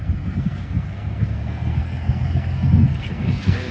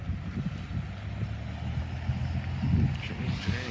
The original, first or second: second